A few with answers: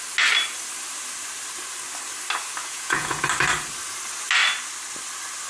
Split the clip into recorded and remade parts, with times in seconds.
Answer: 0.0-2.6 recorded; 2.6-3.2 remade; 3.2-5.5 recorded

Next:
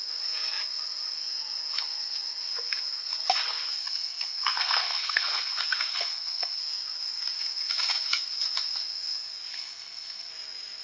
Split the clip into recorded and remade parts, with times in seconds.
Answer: 0.0-3.8 recorded; 3.8-5.5 remade; 5.5-5.9 recorded; 5.9-6.6 remade; 6.6-9.5 recorded; 9.5-10.3 remade; 10.3-10.8 recorded

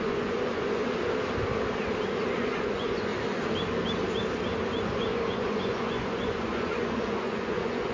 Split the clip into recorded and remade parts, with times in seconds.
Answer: 0.0-0.8 remade; 0.8-2.3 recorded; 2.3-3.1 remade; 3.1-4.8 recorded; 4.8-7.9 remade

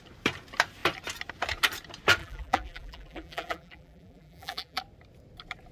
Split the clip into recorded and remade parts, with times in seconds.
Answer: 0.0-2.2 recorded; 2.2-4.8 remade; 4.8-5.7 recorded

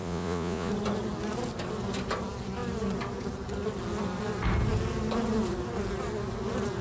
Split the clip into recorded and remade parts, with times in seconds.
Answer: 0.0-0.7 remade; 0.7-6.8 recorded

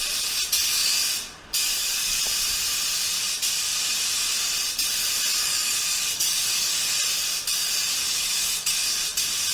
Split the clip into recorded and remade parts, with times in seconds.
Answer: 0.0-1.5 recorded; 1.5-2.2 remade; 2.2-5.4 recorded; 5.4-6.9 remade; 6.9-8.0 recorded; 8.0-9.0 remade; 9.0-9.5 recorded

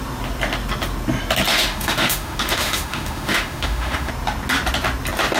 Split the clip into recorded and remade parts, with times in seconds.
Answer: 0.0-1.5 recorded; 1.5-4.1 remade; 4.1-5.4 recorded